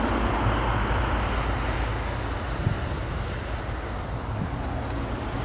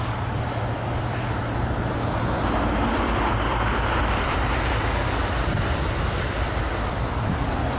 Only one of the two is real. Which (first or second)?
first